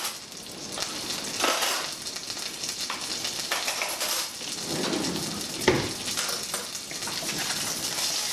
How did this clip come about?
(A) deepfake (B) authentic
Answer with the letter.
B